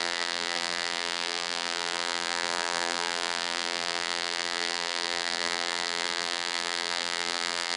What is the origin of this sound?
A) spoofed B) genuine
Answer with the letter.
A